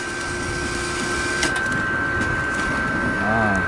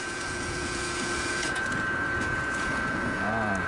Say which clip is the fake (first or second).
second